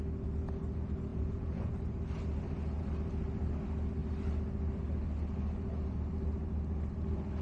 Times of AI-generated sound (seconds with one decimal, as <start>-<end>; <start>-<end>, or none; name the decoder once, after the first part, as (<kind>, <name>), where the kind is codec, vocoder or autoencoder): 1.1-1.7 (vocoder, Vocos)